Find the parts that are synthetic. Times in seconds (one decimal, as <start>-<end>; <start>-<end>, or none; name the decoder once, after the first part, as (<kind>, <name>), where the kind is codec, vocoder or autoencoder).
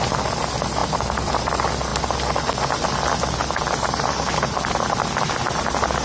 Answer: 0.8-1.4 (vocoder, BigVGAN v2)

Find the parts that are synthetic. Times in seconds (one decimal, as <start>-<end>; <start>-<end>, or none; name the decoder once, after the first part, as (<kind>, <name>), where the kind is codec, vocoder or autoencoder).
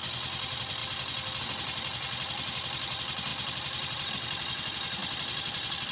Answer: 3.3-4.1 (vocoder, BigVGAN v2); 5.0-5.9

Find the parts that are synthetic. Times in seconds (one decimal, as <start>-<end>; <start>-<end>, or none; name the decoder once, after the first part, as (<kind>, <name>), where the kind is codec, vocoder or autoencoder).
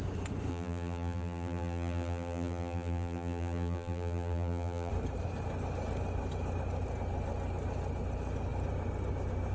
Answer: 0.5-4.9 (vocoder, BigVGAN v2)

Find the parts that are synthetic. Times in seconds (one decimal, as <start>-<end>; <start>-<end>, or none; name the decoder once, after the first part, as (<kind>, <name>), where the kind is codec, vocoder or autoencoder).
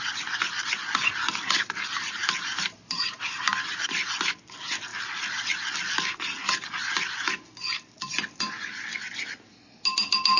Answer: 2.2-3.4 (vocoder, BigVGAN v2)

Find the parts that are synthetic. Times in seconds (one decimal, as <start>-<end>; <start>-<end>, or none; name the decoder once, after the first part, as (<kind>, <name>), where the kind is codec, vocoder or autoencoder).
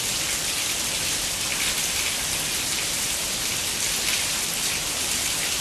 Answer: 0.0-1.5 (vocoder, BigVGAN v2); 4.9-5.6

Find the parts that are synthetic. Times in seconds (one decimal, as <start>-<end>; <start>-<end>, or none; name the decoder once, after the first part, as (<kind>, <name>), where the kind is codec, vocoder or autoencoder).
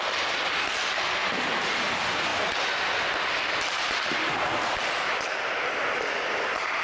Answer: 1.2-1.9 (vocoder, BigVGAN v2)